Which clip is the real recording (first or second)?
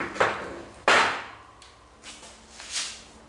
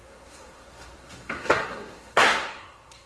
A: first